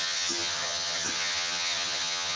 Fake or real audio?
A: fake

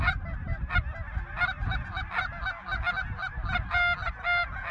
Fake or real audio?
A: real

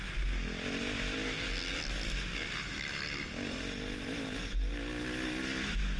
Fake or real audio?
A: real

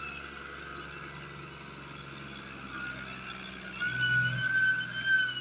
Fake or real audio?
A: real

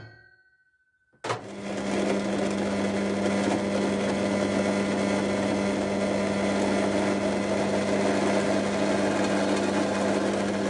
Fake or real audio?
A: real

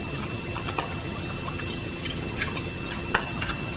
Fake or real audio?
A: fake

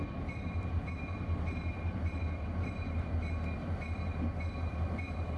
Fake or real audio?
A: fake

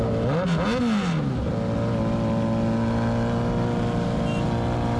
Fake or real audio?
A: real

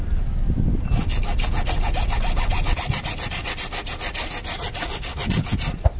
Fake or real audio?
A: real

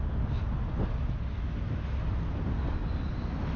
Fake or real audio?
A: real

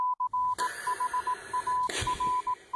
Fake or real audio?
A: real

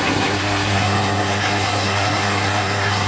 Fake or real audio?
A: fake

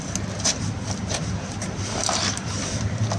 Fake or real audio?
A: real